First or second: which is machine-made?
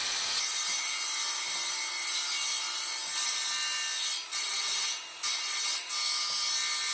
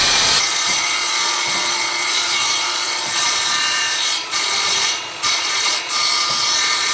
second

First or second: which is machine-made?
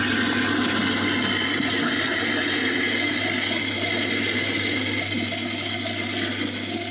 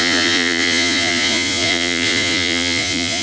second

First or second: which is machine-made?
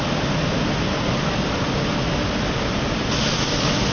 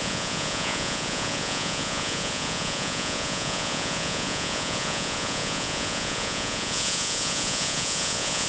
second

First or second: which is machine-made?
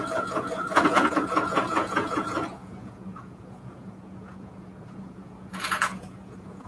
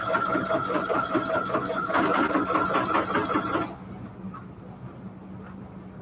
first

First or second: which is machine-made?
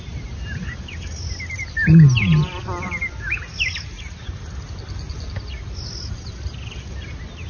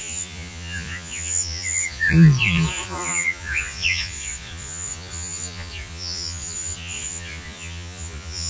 second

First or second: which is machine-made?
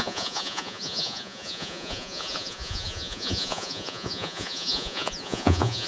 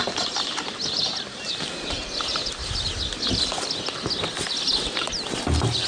first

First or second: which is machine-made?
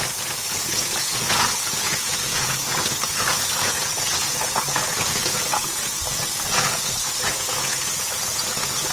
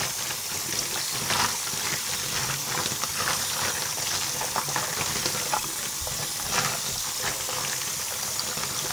first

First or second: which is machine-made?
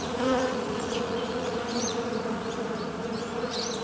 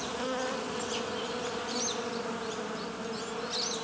first